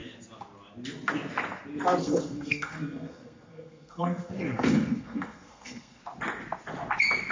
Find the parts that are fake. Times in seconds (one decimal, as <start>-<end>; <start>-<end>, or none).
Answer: 2.0-6.0